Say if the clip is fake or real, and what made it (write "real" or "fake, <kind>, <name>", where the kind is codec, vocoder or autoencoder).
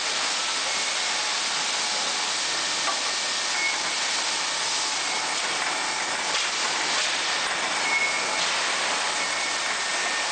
real